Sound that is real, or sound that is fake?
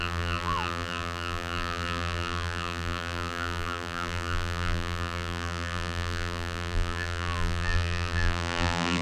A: fake